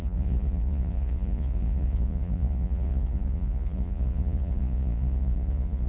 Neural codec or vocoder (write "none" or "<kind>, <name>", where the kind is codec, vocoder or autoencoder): vocoder, Vocos